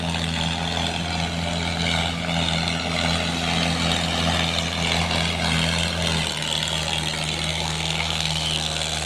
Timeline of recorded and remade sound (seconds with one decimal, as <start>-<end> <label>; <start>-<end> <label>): 0.0-7.5 recorded; 7.5-9.1 remade